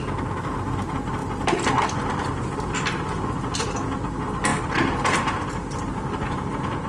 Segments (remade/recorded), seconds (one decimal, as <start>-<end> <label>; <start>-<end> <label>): 0.0-6.9 recorded